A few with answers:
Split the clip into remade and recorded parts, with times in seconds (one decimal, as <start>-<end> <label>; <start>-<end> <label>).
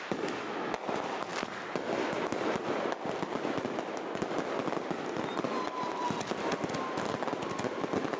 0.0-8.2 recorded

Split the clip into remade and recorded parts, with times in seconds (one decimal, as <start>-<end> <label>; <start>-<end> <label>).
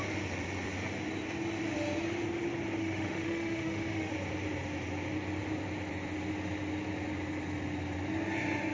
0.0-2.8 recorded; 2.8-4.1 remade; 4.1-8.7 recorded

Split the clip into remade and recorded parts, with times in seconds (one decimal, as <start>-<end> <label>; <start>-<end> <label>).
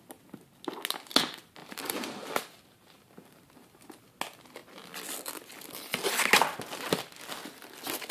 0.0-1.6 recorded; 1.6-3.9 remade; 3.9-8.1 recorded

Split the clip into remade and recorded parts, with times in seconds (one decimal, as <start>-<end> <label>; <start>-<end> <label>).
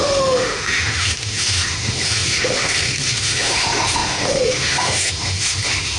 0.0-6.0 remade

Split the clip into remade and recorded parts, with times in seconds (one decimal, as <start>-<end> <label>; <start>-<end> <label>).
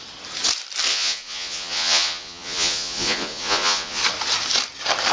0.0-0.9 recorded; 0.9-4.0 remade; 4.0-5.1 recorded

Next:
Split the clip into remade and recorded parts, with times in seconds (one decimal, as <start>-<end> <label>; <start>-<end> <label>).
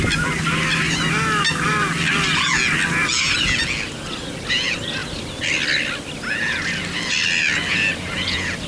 0.0-8.7 recorded